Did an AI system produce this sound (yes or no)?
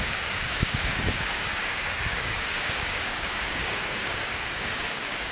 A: yes